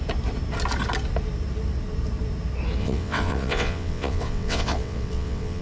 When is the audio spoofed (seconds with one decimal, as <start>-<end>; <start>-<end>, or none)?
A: 2.8-5.6